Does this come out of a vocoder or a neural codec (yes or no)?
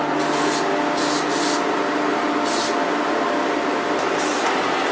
no